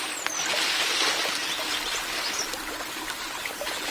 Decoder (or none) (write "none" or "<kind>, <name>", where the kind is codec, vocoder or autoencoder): none